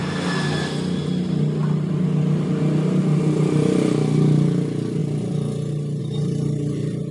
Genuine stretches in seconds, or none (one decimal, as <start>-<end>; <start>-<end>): 0.0-7.1

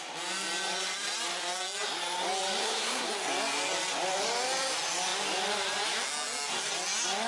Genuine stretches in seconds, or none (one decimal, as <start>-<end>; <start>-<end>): 0.0-2.6; 3.1-7.3

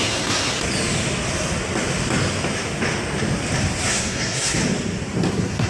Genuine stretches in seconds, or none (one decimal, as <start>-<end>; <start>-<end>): 0.5-3.9; 4.6-5.3

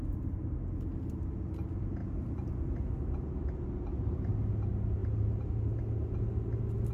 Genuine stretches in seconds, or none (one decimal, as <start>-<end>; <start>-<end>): 0.0-6.9

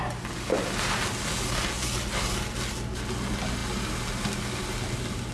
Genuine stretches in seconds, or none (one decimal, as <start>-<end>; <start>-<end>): 0.0-5.3